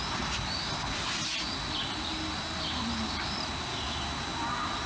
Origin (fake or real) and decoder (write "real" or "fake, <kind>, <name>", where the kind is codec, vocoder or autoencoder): real